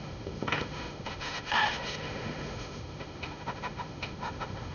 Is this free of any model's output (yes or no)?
no